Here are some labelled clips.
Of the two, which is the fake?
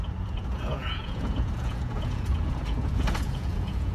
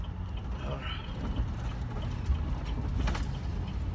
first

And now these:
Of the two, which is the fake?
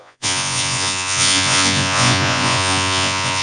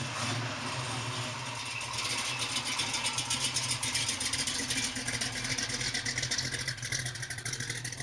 first